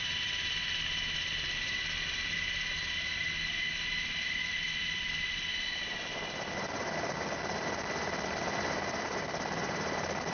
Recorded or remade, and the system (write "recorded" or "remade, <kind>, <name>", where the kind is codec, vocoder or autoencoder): remade, vocoder, BigVGAN v2